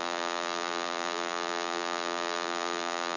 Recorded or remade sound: remade